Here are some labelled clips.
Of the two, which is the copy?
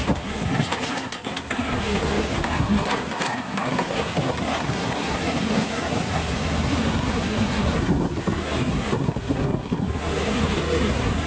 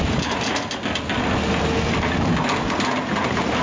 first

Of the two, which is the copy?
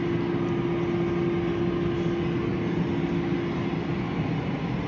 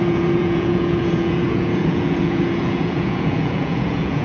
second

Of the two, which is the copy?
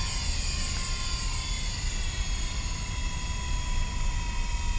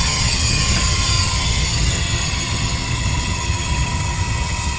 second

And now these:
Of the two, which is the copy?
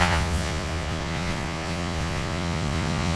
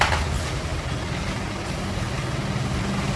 first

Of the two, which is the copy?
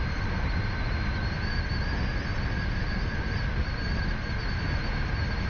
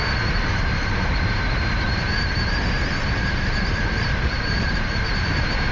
second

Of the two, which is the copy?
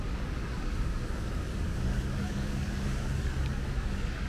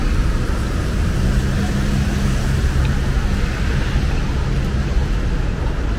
first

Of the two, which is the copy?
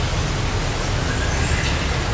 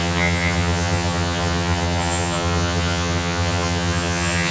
second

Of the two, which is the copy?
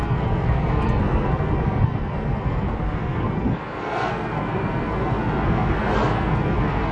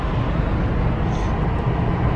first